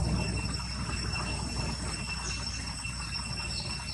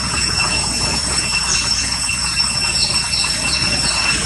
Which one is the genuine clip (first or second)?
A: first